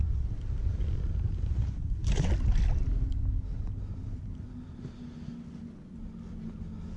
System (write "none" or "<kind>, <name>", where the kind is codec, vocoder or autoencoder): none